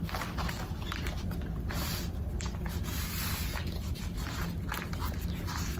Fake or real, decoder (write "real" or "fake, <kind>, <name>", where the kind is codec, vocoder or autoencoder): real